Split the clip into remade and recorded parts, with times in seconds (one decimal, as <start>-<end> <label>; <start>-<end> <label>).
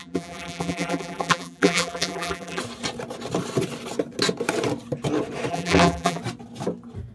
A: 0.0-2.6 remade; 2.6-5.5 recorded; 5.5-6.2 remade; 6.2-7.1 recorded